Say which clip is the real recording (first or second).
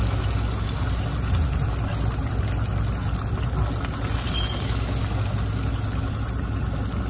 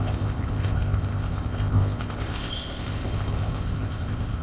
first